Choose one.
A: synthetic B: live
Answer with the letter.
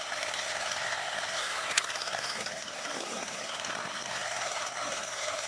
A